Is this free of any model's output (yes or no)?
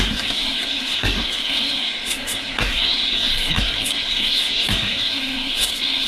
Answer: no